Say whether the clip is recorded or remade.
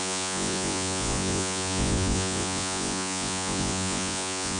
remade